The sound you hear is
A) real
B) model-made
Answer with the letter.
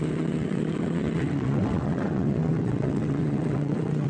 B